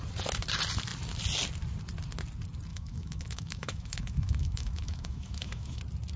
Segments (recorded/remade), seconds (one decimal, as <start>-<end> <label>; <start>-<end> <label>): 0.0-2.7 recorded; 2.7-5.8 remade; 5.8-6.2 recorded